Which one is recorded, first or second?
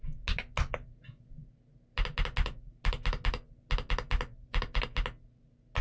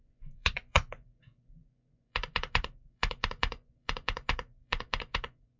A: first